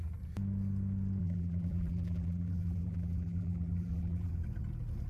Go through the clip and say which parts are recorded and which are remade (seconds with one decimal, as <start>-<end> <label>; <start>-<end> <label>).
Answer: 0.0-1.2 recorded; 1.2-4.3 remade; 4.3-5.1 recorded